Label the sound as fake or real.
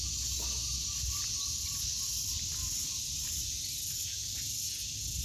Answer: real